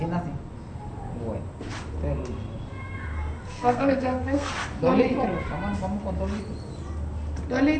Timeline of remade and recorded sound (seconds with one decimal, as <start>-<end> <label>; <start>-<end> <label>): 0.0-3.4 recorded; 3.4-4.5 remade; 4.5-7.8 recorded